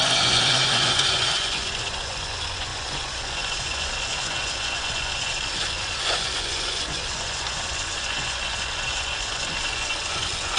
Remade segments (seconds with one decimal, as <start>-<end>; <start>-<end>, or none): 0.0-10.6